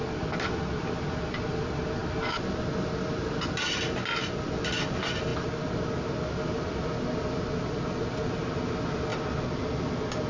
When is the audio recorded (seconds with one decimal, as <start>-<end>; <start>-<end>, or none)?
0.0-10.3

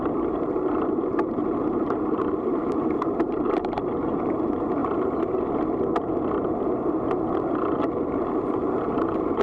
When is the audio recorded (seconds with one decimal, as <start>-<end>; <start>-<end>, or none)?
4.8-8.0

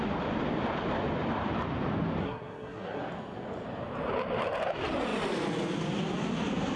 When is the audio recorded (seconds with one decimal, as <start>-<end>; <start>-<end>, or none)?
0.0-2.2; 3.0-6.8